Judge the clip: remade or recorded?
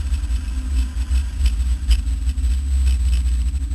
recorded